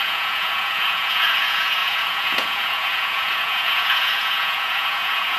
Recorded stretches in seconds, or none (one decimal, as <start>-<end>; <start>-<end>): none